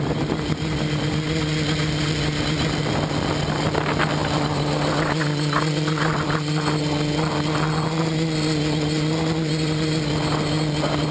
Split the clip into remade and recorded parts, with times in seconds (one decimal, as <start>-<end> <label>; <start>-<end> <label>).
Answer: 0.0-11.1 recorded